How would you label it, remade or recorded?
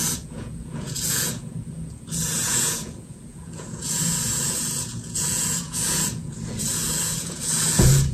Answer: remade